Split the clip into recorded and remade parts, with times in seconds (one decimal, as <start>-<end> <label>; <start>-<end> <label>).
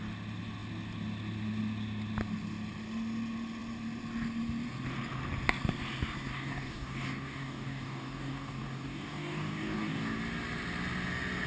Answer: 0.0-6.3 recorded; 6.3-10.2 remade; 10.2-11.5 recorded